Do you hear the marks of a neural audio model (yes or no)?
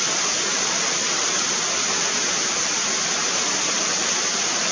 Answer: no